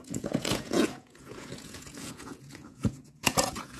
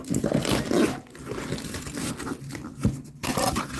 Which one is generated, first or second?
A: first